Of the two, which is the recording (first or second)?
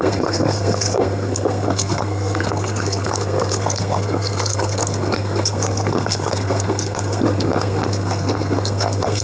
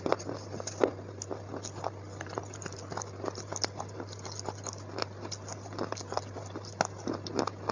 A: second